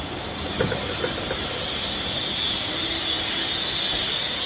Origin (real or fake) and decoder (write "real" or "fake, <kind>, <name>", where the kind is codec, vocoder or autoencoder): real